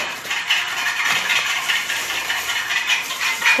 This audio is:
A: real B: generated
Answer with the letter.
B